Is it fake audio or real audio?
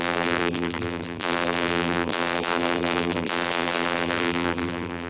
fake